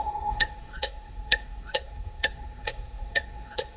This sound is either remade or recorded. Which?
remade